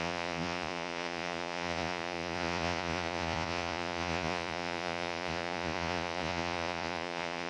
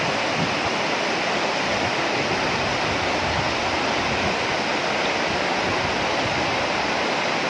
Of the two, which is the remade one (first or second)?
first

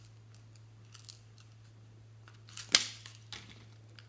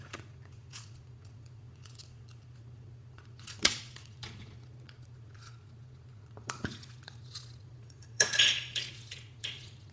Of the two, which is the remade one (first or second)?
second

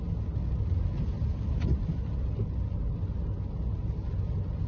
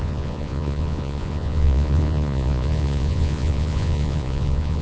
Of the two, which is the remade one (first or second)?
second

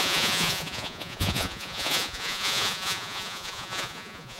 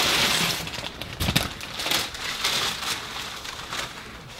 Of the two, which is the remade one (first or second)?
first